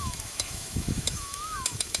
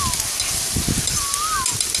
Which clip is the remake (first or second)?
first